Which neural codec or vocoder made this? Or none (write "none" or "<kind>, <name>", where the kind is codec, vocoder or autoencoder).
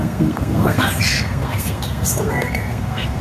codec, SNAC